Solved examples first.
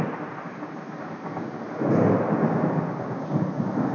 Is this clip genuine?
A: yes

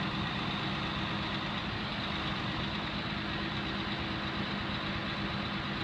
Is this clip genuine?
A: yes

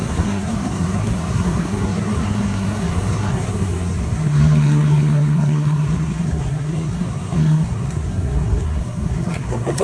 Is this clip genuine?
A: no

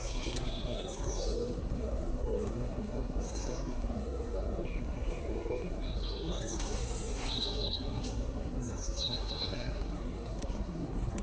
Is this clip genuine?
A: no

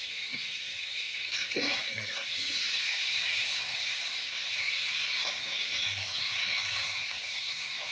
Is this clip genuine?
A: no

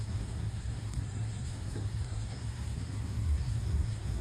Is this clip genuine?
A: no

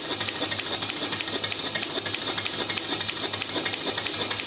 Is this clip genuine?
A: yes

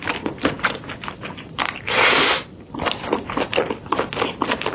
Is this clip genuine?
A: yes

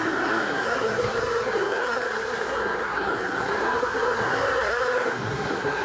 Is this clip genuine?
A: no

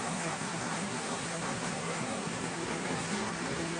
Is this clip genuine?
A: no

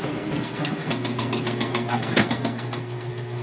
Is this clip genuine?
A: no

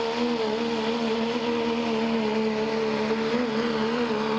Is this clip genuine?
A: yes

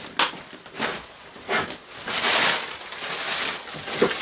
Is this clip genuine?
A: yes